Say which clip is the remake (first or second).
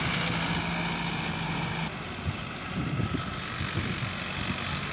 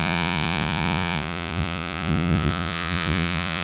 second